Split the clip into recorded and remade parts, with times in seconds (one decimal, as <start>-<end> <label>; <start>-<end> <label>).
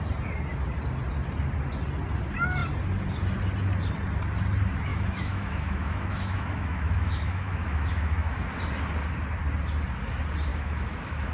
0.0-4.9 recorded; 4.9-8.5 remade; 8.5-10.5 recorded; 10.5-11.3 remade